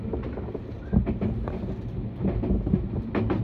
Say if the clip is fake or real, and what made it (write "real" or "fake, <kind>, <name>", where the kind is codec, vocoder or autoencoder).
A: real